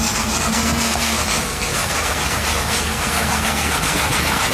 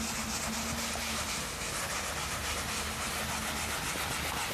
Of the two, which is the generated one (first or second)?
first